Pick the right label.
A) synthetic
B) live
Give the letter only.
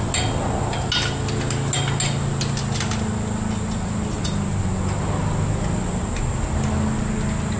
B